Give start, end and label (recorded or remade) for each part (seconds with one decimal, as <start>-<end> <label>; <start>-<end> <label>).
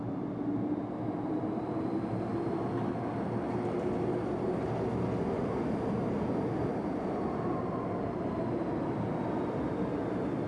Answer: 0.0-10.5 recorded